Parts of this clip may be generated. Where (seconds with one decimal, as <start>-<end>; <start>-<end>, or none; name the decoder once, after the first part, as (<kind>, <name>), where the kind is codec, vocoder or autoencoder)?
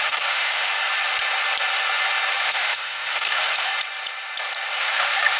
0.0-0.7 (autoencoder, DAC-VAE); 2.4-3.7; 4.8-5.4